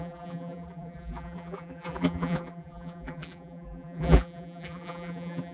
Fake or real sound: fake